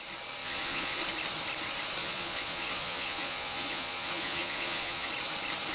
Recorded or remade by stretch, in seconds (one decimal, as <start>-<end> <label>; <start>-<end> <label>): 0.0-0.4 recorded; 0.4-1.0 remade; 1.0-2.0 recorded; 2.0-5.1 remade; 5.1-5.7 recorded